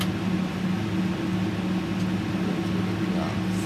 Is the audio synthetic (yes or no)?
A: no